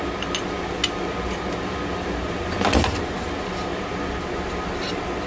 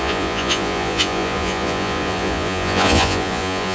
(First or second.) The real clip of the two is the first